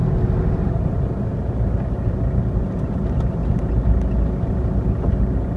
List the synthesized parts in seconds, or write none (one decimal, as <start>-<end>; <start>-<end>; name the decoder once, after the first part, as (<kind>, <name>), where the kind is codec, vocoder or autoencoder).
none